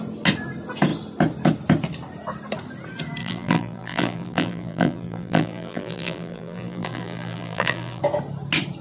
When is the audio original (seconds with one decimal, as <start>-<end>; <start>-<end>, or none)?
0.0-3.2; 8.0-8.8

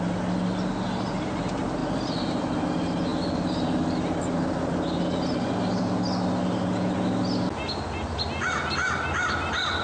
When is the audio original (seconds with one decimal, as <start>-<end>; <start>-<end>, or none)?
0.0-9.8

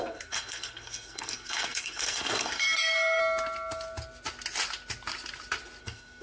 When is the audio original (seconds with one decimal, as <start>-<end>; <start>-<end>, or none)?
3.2-5.8

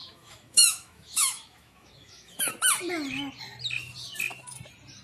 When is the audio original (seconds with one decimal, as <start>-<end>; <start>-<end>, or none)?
2.5-5.0

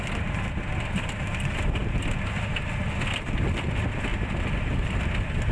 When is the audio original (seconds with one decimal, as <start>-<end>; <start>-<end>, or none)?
0.0-5.5

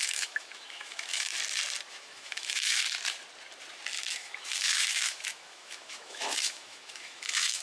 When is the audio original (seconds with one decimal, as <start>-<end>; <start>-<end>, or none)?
1.3-1.9; 2.8-4.1

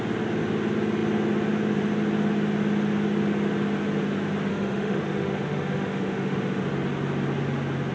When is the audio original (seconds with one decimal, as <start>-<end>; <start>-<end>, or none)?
0.0-4.5; 6.6-7.9

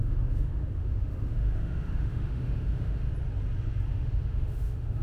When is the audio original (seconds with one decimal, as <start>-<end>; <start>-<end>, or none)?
3.1-3.9